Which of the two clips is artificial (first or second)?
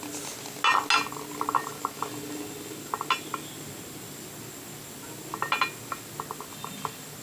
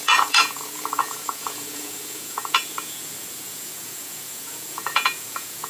second